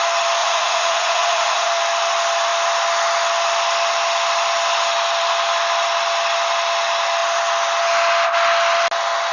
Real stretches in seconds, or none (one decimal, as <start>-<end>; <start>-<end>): 0.0-0.4; 1.7-9.3

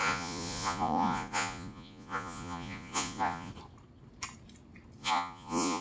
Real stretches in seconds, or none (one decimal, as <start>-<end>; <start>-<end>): 3.5-5.0

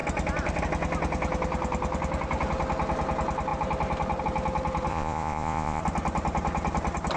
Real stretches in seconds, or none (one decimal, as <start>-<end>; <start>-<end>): 0.0-4.9; 5.8-7.2

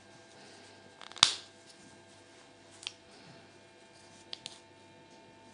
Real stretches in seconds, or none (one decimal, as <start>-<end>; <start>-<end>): 0.0-5.5